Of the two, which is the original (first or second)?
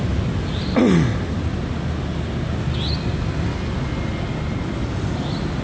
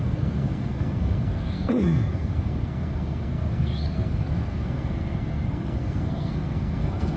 first